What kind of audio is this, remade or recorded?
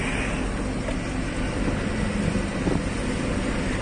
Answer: recorded